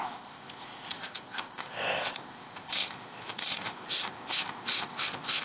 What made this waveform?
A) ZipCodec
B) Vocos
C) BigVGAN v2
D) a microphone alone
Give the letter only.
A